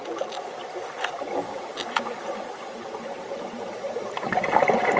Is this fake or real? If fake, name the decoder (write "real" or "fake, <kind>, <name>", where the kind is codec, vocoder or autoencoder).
real